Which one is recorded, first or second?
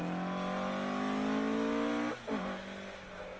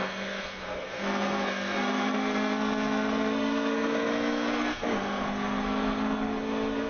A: first